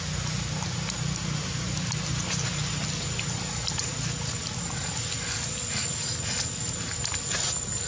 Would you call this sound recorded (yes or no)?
yes